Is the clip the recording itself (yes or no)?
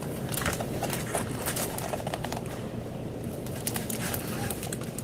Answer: no